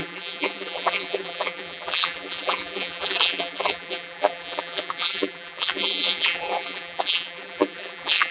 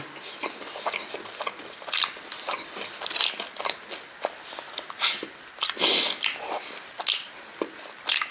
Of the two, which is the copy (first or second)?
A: first